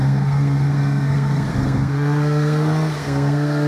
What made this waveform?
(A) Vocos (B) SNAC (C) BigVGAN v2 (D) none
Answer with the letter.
B